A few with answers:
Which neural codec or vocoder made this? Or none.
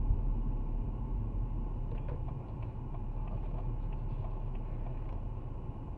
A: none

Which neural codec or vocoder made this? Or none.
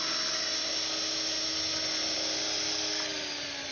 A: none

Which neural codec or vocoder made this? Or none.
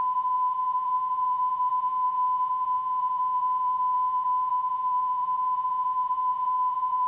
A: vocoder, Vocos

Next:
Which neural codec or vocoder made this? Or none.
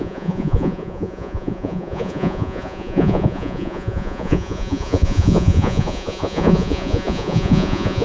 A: vocoder, Vocos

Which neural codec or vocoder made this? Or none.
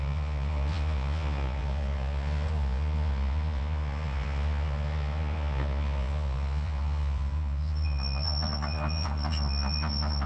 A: vocoder, Vocos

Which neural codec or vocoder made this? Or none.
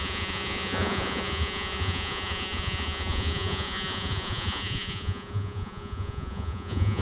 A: vocoder, Vocos